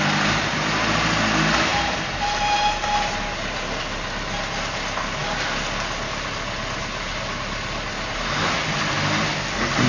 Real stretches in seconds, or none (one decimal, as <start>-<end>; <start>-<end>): 0.0-9.9